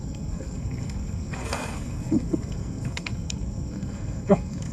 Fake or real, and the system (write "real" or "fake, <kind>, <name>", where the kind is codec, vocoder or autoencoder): fake, codec, SNAC